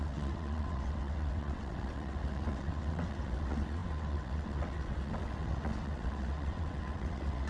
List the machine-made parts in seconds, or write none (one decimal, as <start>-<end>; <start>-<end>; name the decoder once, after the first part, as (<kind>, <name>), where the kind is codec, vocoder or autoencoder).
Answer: 0.0-7.5 (vocoder, WaveNeXt)